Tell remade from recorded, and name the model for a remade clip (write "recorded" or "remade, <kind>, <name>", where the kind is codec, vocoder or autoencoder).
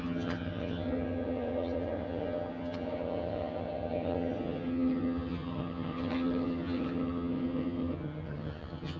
remade, vocoder, HiFi-GAN